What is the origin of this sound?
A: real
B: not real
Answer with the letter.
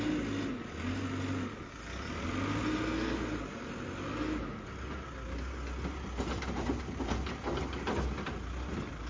A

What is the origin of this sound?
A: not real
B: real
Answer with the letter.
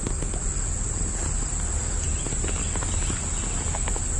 B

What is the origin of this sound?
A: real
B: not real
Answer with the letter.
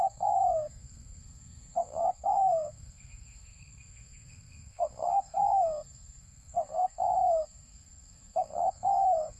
B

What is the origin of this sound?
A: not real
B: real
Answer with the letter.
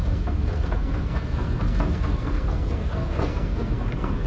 A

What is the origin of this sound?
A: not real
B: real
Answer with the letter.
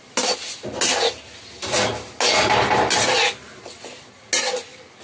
B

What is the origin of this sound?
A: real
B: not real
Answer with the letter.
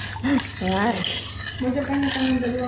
A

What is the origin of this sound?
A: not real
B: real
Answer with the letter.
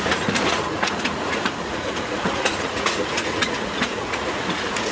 A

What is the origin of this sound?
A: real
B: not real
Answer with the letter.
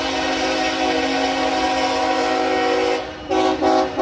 A